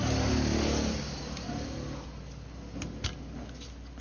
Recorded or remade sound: recorded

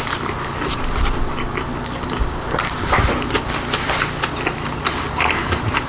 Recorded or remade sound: remade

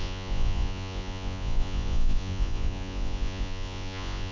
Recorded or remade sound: remade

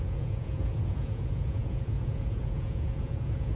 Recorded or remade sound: remade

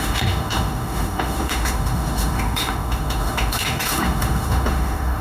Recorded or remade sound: remade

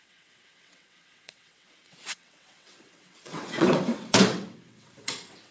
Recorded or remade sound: remade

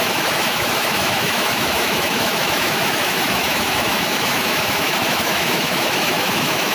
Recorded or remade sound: remade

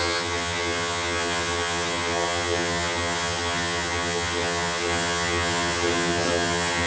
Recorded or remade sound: remade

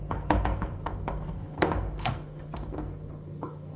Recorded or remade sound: remade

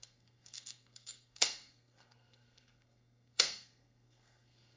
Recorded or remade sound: remade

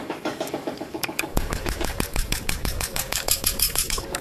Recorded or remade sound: remade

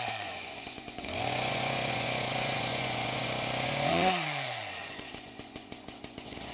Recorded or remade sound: remade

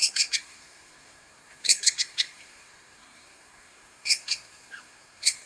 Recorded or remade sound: remade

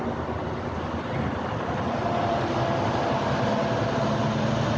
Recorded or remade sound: recorded